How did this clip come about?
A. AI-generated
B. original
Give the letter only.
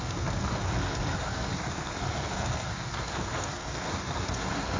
A